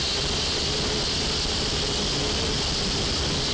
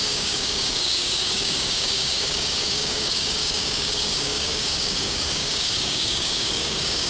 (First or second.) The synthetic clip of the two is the second